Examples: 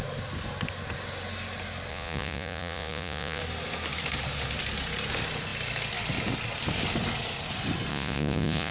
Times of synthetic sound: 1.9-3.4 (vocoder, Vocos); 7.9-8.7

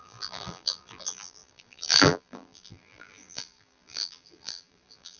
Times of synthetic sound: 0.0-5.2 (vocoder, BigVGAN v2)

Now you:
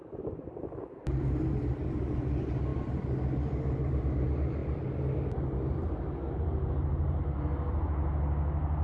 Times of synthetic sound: none

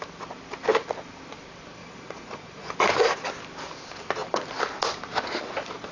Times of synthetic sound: 1.8-2.7 (vocoder, Vocos)

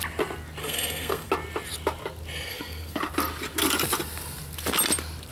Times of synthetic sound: 0.6-1.3 (codec, SNAC); 2.5-3.0